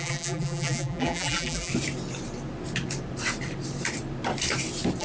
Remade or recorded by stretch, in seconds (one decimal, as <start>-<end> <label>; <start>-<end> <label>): 0.0-1.7 remade; 1.7-5.0 recorded